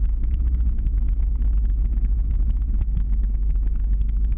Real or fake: fake